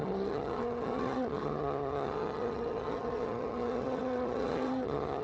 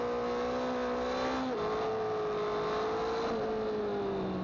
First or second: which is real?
second